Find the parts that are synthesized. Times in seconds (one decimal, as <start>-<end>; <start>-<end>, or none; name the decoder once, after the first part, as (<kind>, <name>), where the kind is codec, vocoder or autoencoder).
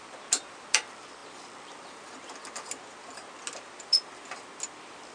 none